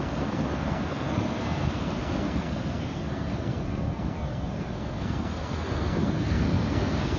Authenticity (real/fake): fake